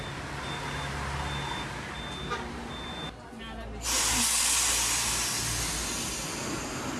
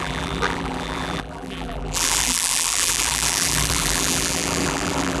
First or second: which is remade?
second